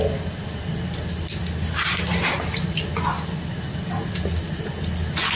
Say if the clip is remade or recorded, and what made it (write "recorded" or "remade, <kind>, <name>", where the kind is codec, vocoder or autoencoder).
recorded